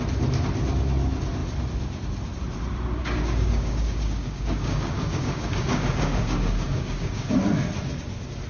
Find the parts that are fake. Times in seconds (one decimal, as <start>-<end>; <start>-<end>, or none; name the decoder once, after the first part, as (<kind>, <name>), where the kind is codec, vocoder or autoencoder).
3.0-7.3 (codec, DAC)